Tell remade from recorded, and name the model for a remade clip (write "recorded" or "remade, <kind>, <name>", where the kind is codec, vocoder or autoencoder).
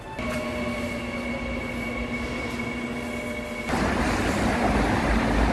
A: recorded